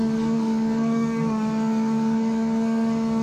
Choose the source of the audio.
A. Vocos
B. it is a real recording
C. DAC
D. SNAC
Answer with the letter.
C